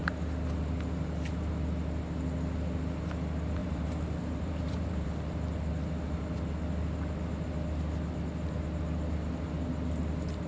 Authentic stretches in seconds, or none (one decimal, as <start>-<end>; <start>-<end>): 0.0-3.6; 5.1-10.5